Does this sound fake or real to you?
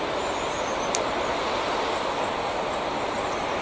real